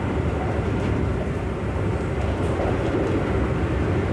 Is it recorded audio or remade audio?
recorded